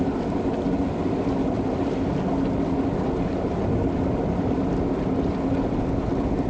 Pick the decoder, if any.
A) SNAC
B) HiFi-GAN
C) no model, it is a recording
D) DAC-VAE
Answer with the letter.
C